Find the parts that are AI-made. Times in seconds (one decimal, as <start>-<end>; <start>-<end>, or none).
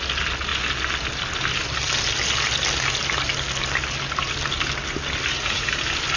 5.3-5.8